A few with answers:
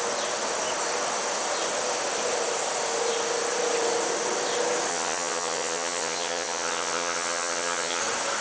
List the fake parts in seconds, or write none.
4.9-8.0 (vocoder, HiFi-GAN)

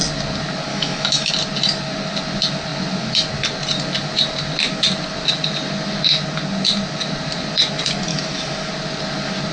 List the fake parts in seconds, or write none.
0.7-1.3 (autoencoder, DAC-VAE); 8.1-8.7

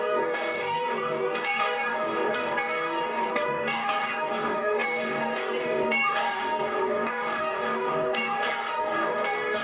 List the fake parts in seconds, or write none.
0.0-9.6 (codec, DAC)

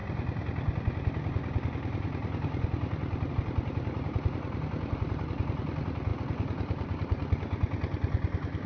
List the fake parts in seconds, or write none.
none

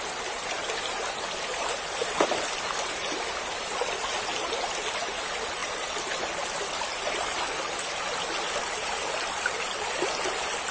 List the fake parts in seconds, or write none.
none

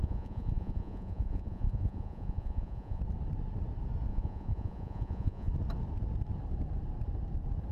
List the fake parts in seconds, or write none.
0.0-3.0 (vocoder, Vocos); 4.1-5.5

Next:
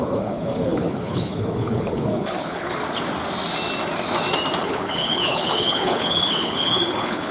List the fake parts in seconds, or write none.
0.0-2.8 (codec, HILCodec); 4.6-7.3